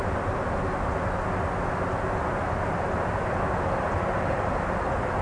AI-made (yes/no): no